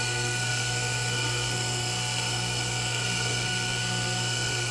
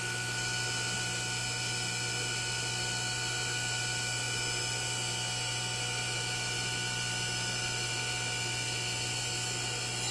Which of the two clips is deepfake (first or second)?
first